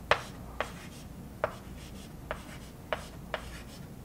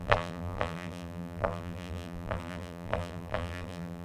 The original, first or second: first